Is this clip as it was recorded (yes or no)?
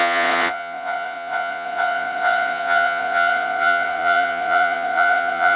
no